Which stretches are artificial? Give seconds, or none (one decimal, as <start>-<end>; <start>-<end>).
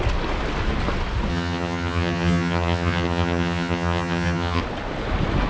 1.3-4.6